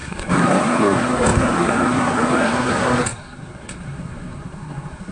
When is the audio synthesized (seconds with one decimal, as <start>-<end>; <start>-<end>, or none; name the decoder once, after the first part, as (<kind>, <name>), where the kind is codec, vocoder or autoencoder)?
0.0-5.1 (codec, SNAC)